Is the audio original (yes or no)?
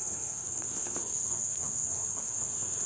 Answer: no